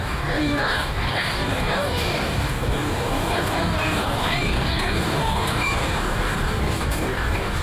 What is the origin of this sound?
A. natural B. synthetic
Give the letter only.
B